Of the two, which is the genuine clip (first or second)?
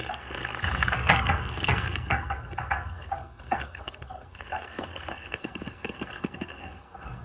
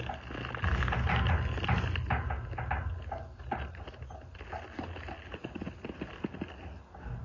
second